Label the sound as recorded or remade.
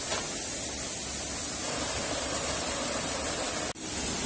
recorded